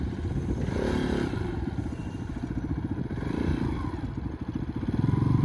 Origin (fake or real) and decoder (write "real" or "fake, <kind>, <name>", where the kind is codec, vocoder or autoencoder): real